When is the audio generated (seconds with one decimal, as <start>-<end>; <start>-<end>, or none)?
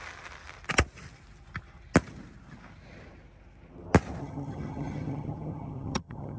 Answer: 4.2-6.4